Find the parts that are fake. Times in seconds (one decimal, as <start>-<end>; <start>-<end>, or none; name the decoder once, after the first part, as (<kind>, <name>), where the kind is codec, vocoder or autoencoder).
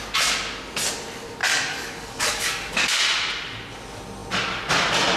1.4-2.9 (codec, DAC)